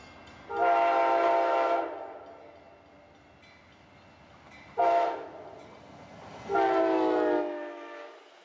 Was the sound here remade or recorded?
recorded